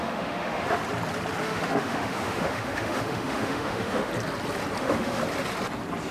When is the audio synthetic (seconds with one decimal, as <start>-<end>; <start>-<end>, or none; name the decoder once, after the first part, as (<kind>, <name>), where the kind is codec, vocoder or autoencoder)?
0.0-0.8 (autoencoder, DAC-VAE); 1.4-4.1; 4.8-5.2